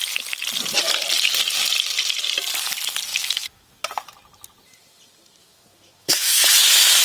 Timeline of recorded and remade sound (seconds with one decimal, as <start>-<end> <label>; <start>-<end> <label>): 0.0-3.1 recorded; 3.1-3.8 remade; 3.8-5.4 recorded; 5.4-6.4 remade; 6.4-7.0 recorded

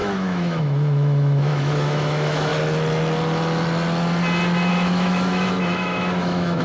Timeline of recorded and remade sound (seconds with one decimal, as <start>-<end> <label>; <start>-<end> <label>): 0.0-2.5 remade; 2.5-4.7 recorded; 4.7-6.6 remade

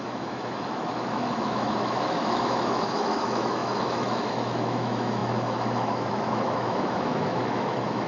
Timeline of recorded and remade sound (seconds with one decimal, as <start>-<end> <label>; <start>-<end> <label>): 0.0-8.1 remade

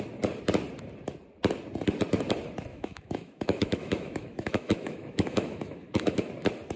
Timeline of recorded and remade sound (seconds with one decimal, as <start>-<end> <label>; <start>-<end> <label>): 0.0-2.7 recorded; 2.7-6.3 remade; 6.3-6.8 recorded

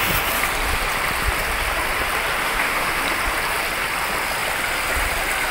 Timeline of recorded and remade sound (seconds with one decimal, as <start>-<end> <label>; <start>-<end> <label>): 0.0-2.4 recorded; 2.4-3.0 remade; 3.0-5.5 recorded

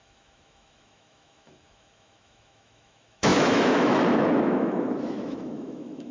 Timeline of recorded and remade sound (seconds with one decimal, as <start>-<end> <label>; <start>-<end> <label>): 0.0-6.1 remade

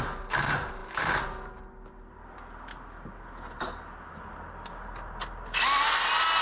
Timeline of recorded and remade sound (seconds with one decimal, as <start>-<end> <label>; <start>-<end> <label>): 0.0-6.4 recorded